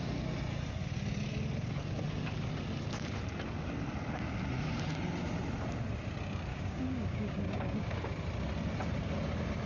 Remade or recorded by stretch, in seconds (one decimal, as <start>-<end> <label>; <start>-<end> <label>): 0.0-6.5 recorded; 6.5-7.9 remade; 7.9-9.7 recorded